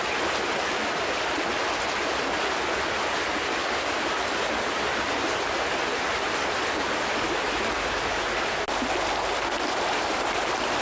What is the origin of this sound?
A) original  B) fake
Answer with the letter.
A